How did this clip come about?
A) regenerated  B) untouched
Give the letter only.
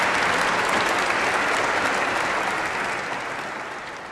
B